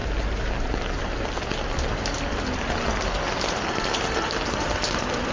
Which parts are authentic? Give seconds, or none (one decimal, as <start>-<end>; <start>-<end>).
0.0-5.3

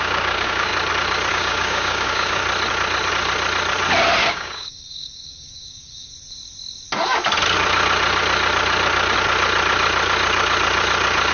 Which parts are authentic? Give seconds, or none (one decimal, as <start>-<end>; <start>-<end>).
0.7-1.3; 2.4-4.3; 6.1-11.3

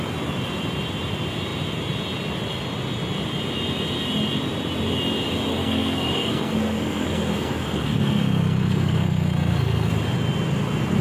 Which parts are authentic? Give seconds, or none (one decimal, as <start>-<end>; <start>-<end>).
0.0-5.5; 9.9-11.0

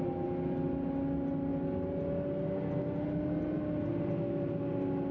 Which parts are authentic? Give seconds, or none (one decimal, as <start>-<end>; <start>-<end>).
0.0-5.1

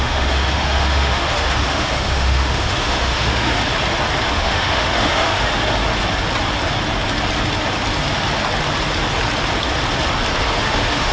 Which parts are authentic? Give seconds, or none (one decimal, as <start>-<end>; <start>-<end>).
3.6-4.3; 5.8-10.5